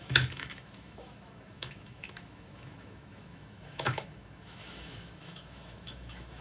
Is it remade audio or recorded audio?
remade